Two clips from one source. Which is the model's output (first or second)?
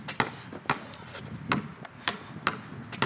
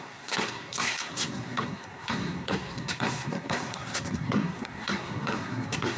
second